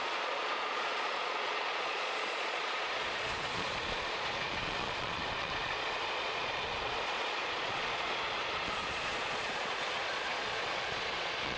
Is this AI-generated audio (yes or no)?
yes